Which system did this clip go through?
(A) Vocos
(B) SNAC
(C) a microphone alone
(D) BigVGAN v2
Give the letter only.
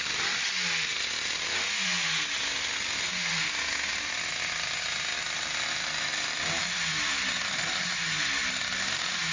C